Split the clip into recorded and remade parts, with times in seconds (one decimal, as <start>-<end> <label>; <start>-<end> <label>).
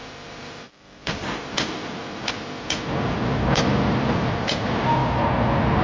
0.0-2.3 remade; 2.3-5.8 recorded